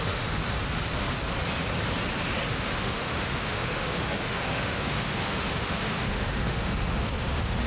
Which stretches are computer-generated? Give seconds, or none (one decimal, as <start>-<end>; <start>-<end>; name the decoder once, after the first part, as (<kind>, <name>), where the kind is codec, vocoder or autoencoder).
0.0-0.4 (autoencoder, DAC-VAE); 2.5-7.7